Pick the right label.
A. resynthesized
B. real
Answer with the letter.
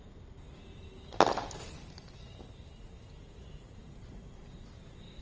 B